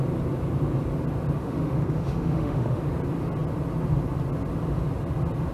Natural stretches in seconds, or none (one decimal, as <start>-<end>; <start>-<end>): 0.0-1.4; 2.8-5.5